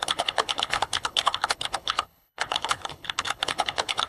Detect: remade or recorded remade